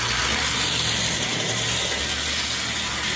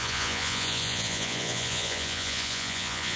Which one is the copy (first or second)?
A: second